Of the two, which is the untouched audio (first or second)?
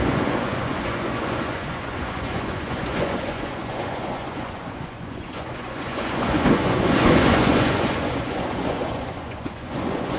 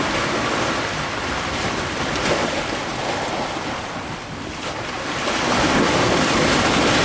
second